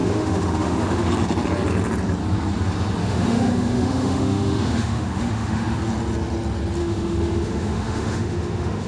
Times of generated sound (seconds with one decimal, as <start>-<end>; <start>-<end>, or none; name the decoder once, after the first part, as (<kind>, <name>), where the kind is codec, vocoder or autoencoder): 0.0-1.1 (autoencoder, DAC-VAE); 3.0-5.8; 6.8-8.9

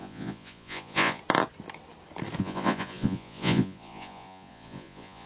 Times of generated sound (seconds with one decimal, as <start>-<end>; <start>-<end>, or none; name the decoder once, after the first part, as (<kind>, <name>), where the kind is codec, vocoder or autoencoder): 0.0-1.2 (vocoder, Vocos); 2.4-5.3

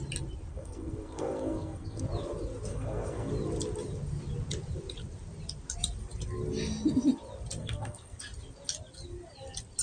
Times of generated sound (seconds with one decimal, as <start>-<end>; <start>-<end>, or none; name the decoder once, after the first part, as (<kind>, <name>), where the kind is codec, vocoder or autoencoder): 0.5-2.0 (codec, SNAC); 2.7-3.3; 7.6-8.2

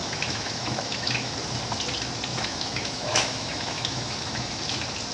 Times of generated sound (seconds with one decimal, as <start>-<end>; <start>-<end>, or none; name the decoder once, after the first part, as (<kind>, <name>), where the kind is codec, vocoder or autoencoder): 0.0-1.3 (autoencoder, DAC-VAE); 2.3-4.6

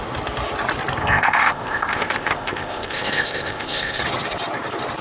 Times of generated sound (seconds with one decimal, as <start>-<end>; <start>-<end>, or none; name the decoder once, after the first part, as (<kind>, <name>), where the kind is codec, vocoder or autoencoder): 1.0-4.0 (codec, ZipCodec)

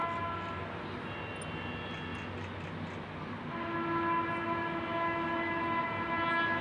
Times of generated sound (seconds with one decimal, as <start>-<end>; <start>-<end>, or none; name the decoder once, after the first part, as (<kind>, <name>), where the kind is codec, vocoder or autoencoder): none

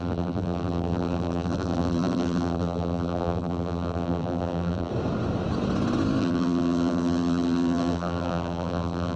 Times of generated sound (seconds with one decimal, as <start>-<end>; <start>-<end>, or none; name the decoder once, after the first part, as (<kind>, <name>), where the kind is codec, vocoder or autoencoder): 0.0-4.9 (vocoder, BigVGAN v2); 6.2-9.2

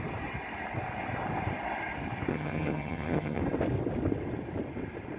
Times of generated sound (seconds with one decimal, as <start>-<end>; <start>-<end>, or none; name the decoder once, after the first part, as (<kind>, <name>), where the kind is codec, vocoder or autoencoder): 2.3-3.4 (vocoder, HiFi-GAN)